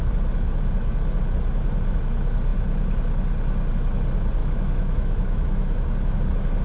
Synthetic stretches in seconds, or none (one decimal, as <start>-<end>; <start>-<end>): 4.4-5.9